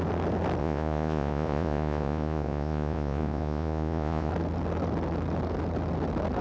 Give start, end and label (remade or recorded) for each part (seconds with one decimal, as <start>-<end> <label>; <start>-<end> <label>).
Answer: 0.0-0.6 recorded; 0.6-4.3 remade; 4.3-6.4 recorded